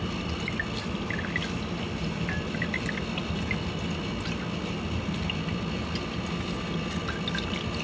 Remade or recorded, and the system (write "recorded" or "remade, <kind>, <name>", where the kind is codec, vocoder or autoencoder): recorded